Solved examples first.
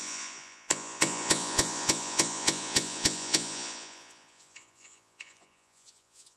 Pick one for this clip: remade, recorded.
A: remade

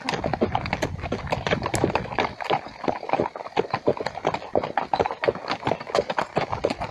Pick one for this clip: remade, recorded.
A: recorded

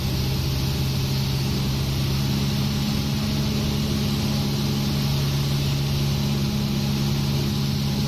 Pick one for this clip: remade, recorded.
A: recorded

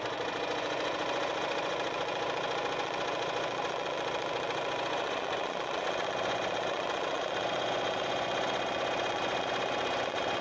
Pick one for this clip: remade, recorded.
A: remade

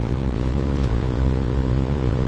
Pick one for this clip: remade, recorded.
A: remade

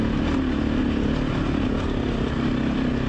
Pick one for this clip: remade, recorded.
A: recorded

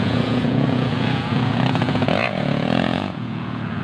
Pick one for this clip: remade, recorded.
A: remade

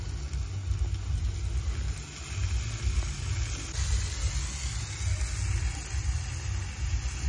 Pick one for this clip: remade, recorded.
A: recorded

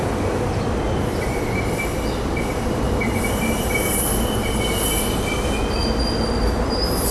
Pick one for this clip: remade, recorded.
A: recorded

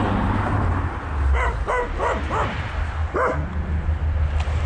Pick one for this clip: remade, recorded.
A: recorded